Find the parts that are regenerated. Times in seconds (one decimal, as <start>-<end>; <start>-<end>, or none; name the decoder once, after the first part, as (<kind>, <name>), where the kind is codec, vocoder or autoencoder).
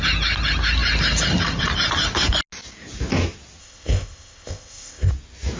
3.6-5.1 (codec, ZipCodec)